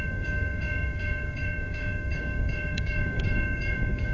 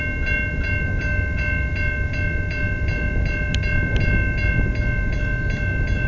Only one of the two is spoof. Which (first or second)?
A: first